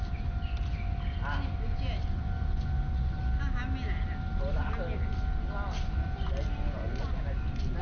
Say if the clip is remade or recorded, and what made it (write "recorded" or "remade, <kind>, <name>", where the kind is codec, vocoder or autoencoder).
recorded